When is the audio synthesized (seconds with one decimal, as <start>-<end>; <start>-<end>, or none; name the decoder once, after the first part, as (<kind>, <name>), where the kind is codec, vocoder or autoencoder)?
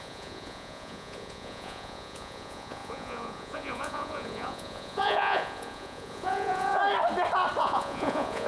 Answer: 0.0-6.8 (vocoder, Vocos); 7.6-8.5